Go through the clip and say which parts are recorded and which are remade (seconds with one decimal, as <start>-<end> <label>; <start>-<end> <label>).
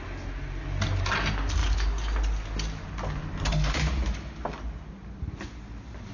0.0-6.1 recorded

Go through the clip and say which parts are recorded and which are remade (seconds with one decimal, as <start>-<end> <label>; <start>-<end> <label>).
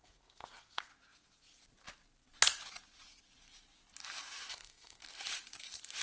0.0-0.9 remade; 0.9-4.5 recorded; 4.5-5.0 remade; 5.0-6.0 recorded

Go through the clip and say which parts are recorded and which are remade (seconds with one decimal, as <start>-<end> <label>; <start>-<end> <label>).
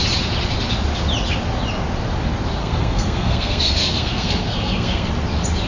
0.0-2.6 recorded; 2.6-5.1 remade; 5.1-5.7 recorded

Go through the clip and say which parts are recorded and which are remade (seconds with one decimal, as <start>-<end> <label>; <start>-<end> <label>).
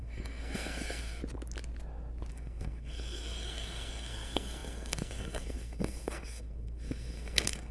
0.0-1.2 remade; 1.2-2.3 recorded; 2.3-7.7 remade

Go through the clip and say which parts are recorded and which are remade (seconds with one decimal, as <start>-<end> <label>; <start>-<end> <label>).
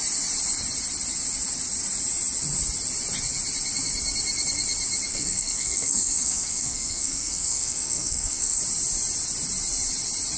0.0-5.1 recorded; 5.1-8.6 remade; 8.6-10.4 recorded